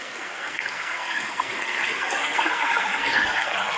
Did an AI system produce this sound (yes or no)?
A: yes